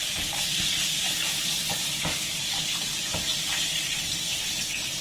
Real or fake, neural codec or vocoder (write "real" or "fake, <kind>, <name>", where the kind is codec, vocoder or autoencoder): fake, vocoder, BigVGAN v2